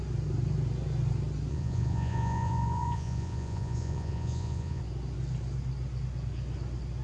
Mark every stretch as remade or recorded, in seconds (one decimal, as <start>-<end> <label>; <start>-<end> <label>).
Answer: 0.0-1.5 recorded; 1.5-4.8 remade; 4.8-7.0 recorded